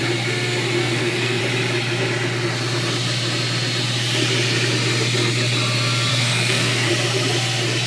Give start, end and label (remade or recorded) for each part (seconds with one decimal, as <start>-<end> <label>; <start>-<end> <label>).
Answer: 0.0-0.8 recorded; 0.8-1.4 remade; 1.4-6.1 recorded; 6.1-6.9 remade; 6.9-7.9 recorded